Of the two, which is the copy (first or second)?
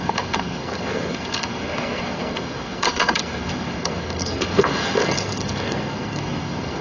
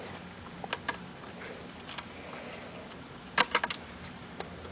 first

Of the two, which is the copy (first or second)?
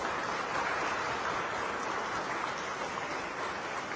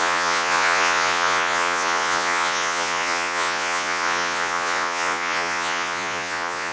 second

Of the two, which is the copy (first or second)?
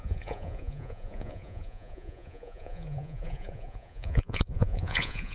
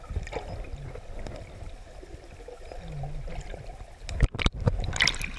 first